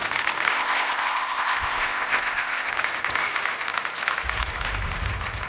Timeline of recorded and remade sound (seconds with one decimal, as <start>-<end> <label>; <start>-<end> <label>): 0.0-0.5 recorded; 0.5-2.7 remade; 2.7-5.5 recorded